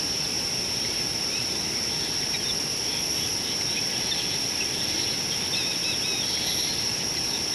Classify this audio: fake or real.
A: fake